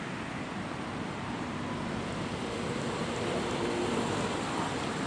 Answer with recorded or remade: recorded